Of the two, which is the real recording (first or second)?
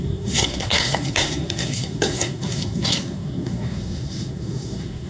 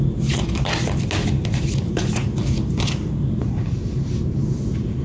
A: second